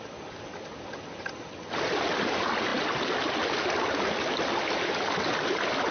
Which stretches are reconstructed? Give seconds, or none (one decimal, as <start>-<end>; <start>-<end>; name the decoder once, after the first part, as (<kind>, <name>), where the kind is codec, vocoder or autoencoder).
none